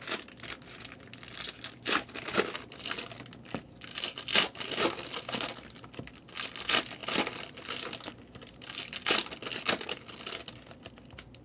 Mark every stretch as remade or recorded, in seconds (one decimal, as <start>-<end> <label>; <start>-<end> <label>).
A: 0.0-11.4 recorded